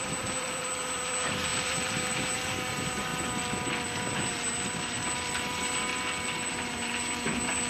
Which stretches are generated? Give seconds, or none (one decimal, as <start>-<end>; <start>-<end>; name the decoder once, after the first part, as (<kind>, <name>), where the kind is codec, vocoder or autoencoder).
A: 0.0-3.1 (vocoder, BigVGAN v2); 4.0-5.9; 6.5-7.7